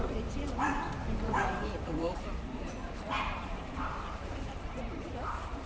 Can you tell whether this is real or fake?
fake